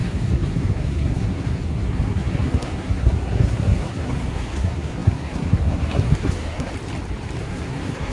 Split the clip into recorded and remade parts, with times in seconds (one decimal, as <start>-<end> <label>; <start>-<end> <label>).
0.0-6.7 remade; 6.7-7.4 recorded; 7.4-8.1 remade